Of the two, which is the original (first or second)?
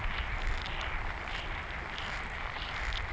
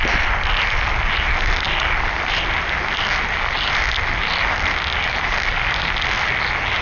second